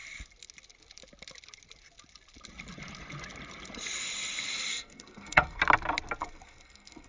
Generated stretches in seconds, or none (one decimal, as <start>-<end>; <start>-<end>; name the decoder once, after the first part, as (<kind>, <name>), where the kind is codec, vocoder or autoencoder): 4.7-5.6 (codec, SNAC); 6.2-7.1